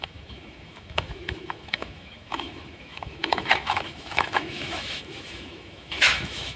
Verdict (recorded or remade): remade